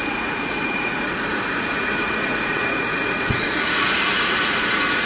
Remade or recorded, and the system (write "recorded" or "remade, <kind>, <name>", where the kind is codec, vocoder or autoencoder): remade, vocoder, Vocos